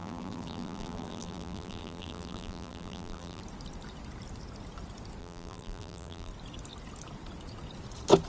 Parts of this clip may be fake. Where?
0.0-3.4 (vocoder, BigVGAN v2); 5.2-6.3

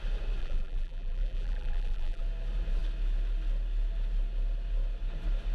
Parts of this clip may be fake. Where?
0.4-2.2 (vocoder, BigVGAN v2)

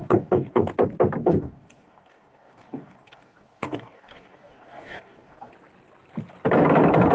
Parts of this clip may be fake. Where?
0.0-0.7 (codec, DAC); 1.2-5.5